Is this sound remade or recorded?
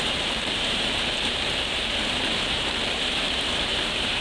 remade